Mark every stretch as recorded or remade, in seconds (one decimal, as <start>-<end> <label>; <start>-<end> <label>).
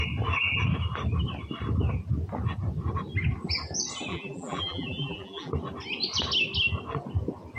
0.0-4.1 recorded; 4.1-5.5 remade; 5.5-7.6 recorded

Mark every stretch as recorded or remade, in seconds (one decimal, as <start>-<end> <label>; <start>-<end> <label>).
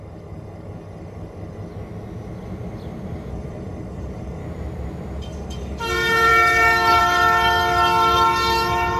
0.0-1.7 remade; 1.7-3.3 recorded; 3.3-4.4 remade; 4.4-5.2 recorded; 5.2-9.0 remade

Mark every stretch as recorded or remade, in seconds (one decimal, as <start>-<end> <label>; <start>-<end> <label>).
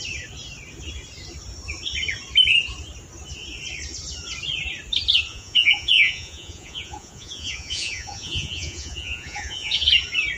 0.0-5.3 recorded; 5.3-9.9 remade; 9.9-10.4 recorded